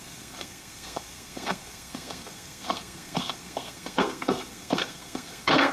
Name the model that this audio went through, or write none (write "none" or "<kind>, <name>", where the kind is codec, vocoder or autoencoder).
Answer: codec, SNAC